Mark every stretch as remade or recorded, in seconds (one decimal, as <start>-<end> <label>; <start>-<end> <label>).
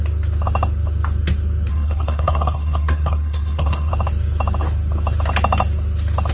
0.0-1.7 recorded; 1.7-3.9 remade; 3.9-6.3 recorded